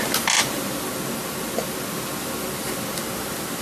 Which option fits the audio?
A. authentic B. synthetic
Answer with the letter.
A